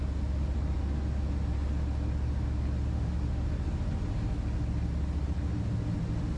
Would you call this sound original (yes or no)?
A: yes